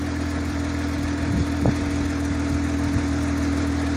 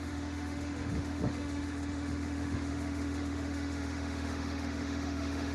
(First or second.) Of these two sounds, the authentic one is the first